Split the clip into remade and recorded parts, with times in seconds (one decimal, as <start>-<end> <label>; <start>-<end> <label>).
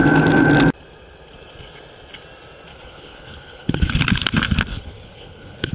0.0-2.7 recorded; 2.7-3.9 remade; 3.9-4.7 recorded; 4.7-5.7 remade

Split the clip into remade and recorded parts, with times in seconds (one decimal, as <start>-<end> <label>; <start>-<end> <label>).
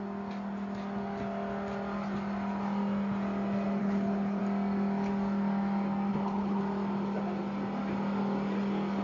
0.0-3.8 recorded; 3.8-4.4 remade; 4.4-6.1 recorded; 6.1-6.6 remade; 6.6-9.0 recorded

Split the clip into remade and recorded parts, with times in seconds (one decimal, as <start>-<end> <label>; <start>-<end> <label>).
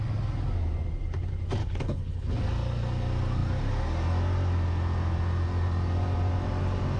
0.0-1.6 recorded; 1.6-2.3 remade; 2.3-7.0 recorded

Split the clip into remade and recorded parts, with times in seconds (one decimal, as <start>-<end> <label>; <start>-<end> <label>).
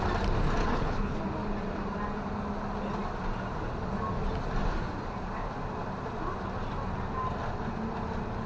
0.0-0.6 recorded; 0.6-1.2 remade; 1.2-8.5 recorded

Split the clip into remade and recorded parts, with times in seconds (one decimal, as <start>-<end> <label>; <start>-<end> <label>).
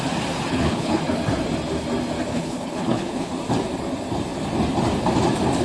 0.0-0.5 recorded; 0.5-1.0 remade; 1.0-2.3 recorded; 2.3-3.3 remade; 3.3-5.6 recorded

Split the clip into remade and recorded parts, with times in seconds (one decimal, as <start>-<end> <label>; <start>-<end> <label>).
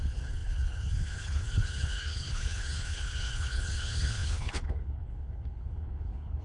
0.0-6.4 remade